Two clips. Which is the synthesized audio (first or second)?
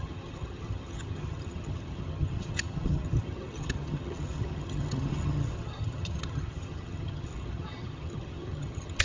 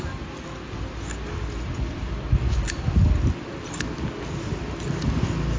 first